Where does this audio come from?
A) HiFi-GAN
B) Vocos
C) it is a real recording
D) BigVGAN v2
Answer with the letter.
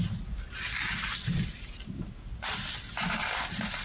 C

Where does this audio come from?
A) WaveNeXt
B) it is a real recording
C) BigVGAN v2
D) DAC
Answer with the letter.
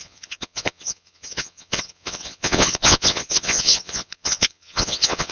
A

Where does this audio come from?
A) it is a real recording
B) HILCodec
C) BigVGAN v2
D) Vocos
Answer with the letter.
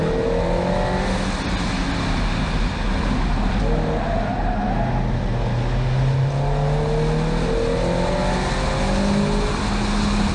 A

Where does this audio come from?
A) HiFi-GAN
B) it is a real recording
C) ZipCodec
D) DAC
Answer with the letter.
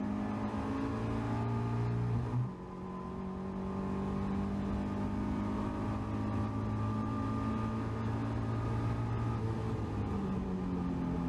B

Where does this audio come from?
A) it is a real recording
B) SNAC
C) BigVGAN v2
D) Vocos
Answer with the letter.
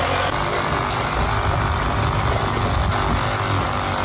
A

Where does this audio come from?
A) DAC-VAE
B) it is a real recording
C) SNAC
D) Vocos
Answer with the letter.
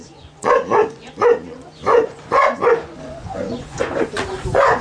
D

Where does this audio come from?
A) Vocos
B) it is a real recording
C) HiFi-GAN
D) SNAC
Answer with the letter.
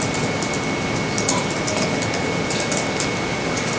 B